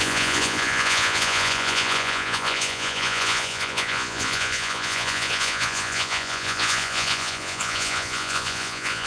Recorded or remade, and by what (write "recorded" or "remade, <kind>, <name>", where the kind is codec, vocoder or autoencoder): remade, vocoder, Vocos